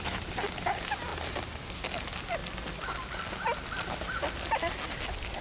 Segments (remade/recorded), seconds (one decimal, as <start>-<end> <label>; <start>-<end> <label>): 0.0-5.4 recorded